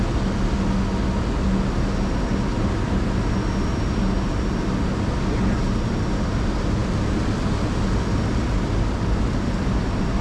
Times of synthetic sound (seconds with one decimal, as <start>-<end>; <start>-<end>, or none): none